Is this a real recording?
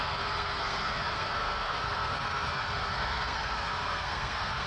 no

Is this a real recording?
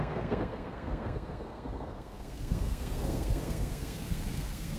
no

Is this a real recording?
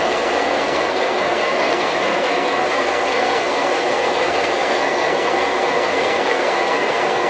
no